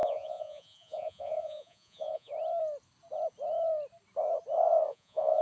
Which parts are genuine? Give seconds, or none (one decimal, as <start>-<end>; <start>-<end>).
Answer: 2.3-4.9